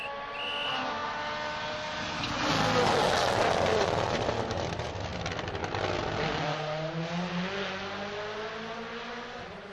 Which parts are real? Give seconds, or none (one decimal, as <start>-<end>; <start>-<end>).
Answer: 0.0-9.7